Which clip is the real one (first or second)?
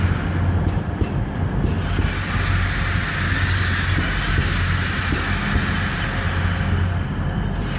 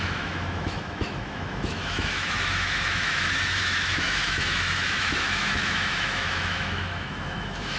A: first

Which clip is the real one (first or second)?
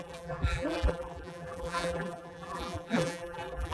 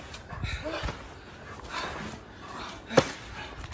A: second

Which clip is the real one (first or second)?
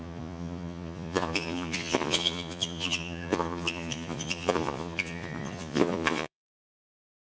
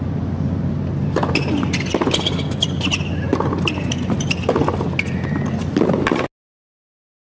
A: second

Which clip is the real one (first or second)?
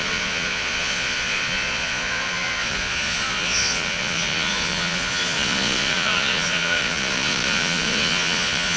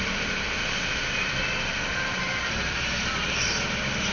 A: second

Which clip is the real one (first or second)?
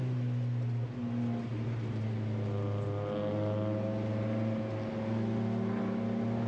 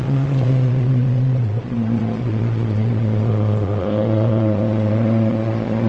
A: first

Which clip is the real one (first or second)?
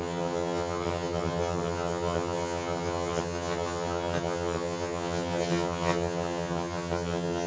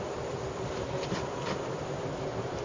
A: second